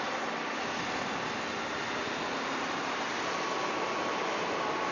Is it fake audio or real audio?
real